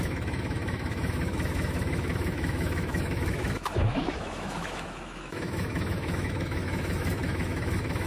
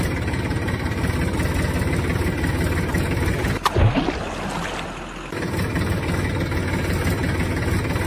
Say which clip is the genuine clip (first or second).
second